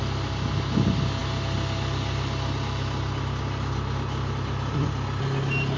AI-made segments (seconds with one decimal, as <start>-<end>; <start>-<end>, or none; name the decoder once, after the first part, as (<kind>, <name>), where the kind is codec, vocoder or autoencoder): none